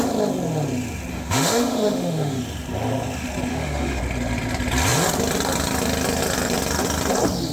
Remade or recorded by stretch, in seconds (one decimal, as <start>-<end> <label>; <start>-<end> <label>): 0.0-1.1 recorded; 1.1-2.4 remade; 2.4-3.5 recorded; 3.5-4.0 remade; 4.0-7.5 recorded